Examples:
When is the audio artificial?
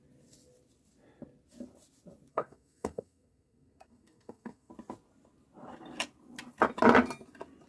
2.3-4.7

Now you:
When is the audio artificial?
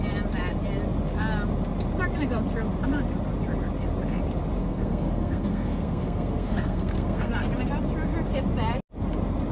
4.6-7.3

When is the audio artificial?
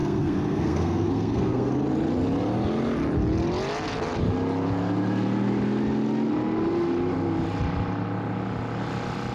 0.0-1.7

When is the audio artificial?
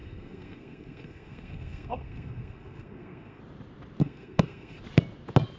0.0-3.4; 4.0-4.8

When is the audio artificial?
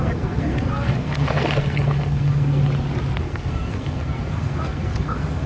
0.0-2.6; 3.2-5.5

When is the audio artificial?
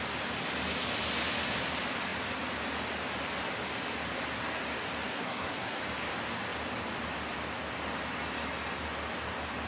5.1-5.8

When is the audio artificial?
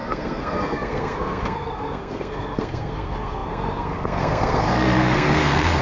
0.0-5.8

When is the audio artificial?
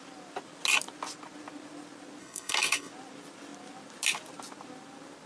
2.2-2.9